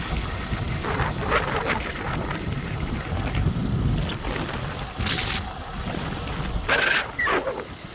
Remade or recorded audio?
recorded